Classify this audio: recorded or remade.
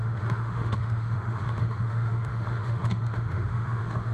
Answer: remade